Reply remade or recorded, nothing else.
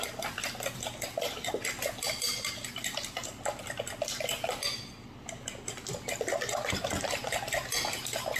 recorded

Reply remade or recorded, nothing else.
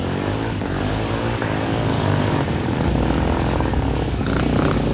remade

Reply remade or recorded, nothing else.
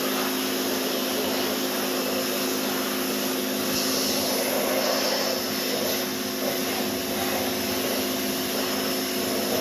recorded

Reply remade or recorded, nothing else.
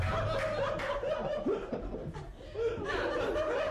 recorded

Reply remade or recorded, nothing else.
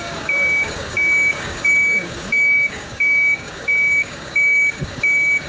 remade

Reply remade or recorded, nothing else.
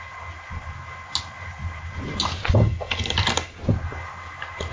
recorded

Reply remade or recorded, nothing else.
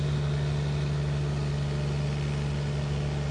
recorded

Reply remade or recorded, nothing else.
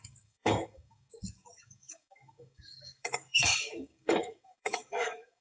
remade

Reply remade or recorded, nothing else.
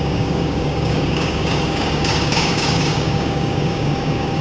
remade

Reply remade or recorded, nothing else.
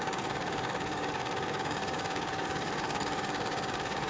remade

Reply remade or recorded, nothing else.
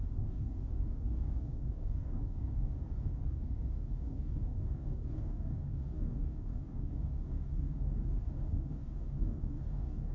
remade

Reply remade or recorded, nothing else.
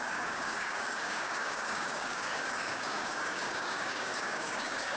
remade